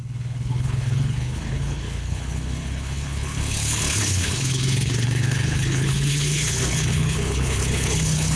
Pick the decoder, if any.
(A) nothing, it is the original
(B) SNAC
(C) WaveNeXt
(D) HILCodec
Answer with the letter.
D